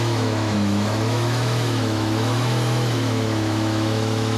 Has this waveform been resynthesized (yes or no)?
yes